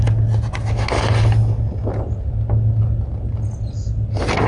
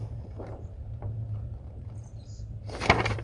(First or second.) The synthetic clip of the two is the second